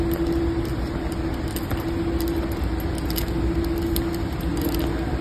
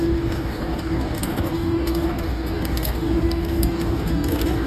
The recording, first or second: first